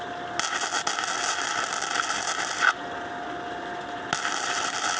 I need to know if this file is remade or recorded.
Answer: recorded